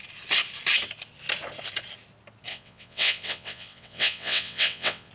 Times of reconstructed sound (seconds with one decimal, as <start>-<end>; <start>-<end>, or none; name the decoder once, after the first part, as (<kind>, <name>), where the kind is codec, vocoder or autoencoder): 2.5-5.1 (vocoder, WaveNeXt)